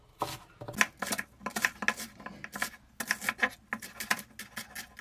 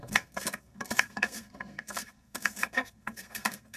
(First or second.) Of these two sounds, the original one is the first